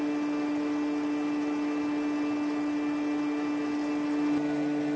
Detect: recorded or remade recorded